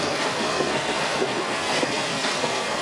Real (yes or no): no